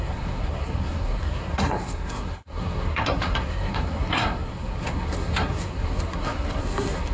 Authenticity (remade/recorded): remade